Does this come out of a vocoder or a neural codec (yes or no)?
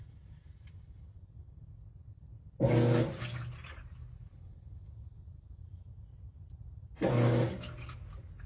no